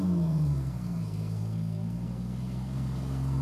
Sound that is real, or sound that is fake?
fake